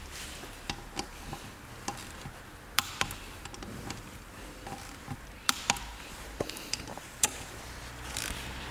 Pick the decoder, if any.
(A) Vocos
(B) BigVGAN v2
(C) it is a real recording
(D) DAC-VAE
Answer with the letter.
B